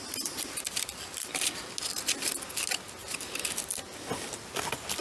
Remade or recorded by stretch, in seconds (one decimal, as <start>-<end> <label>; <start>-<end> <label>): 0.0-5.0 recorded